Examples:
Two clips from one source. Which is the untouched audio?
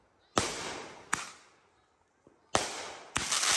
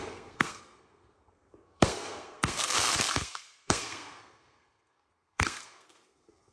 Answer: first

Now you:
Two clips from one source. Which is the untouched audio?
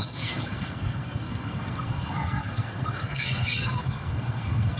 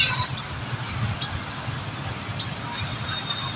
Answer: second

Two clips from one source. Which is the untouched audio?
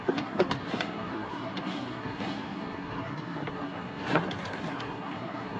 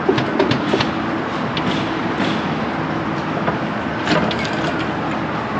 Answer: second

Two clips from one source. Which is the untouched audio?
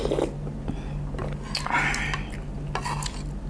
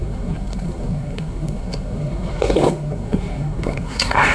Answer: first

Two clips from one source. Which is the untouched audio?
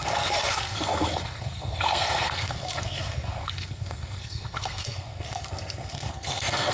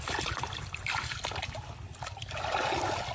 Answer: second